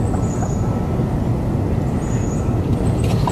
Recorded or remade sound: recorded